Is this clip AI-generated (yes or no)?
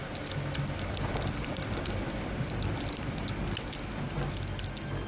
no